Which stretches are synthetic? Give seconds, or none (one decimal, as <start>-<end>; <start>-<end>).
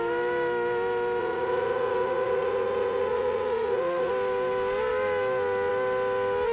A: 1.2-4.1